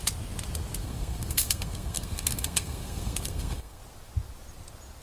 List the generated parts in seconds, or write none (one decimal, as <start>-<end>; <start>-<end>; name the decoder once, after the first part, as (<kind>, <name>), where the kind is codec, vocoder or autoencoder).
0.8-3.8 (codec, SNAC)